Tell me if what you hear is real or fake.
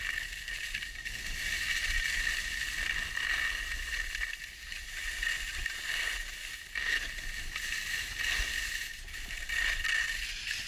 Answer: real